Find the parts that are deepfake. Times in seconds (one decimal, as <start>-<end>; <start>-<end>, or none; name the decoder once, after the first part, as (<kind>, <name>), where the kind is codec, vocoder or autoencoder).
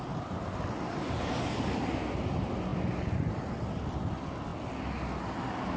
none